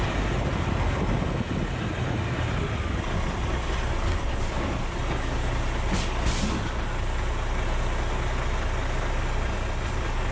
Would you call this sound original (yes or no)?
yes